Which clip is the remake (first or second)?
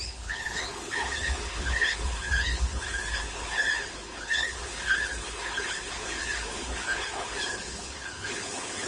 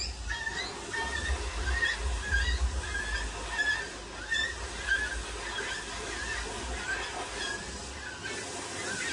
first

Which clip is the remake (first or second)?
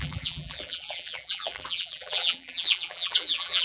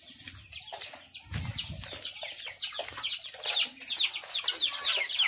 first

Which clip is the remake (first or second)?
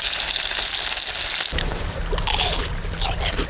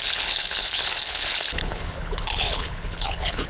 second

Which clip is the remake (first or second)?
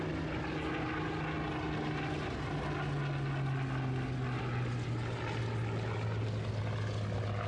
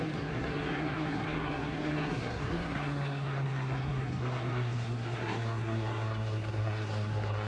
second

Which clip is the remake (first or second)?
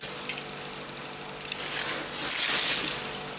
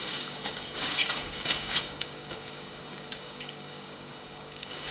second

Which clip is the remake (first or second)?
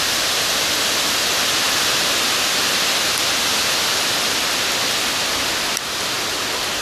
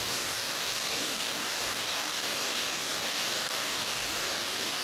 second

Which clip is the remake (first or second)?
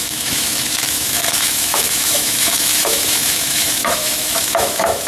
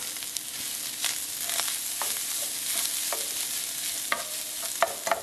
first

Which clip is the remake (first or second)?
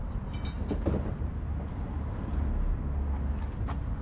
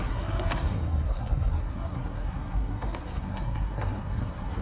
second